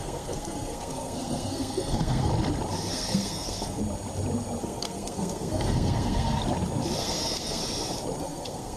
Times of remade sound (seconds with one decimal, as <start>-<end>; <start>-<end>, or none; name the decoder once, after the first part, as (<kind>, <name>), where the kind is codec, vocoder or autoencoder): 0.0-2.3 (codec, SNAC); 2.9-3.8; 4.6-6.4; 7.0-7.6; 8.2-8.8